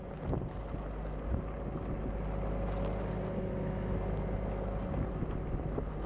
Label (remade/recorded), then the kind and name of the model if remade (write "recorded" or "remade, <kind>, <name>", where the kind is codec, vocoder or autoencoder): recorded